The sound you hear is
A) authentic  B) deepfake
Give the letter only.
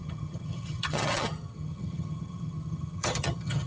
B